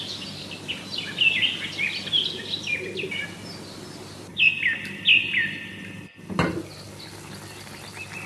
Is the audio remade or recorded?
recorded